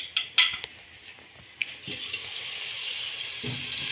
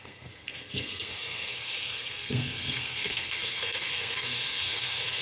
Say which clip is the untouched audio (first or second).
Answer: first